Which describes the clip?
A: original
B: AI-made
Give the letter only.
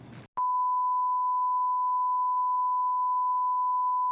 A